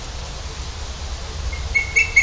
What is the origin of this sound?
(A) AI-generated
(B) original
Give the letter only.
B